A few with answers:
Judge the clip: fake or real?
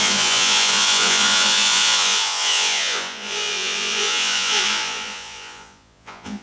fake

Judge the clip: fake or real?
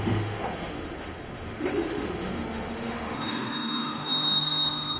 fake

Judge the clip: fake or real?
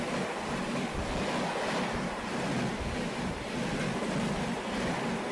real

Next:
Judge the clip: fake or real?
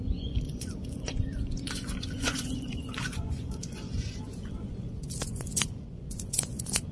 fake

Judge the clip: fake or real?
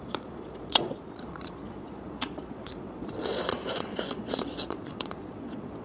fake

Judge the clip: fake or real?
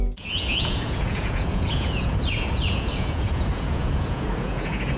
fake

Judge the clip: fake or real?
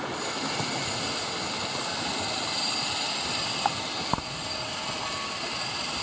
real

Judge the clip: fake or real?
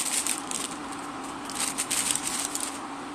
real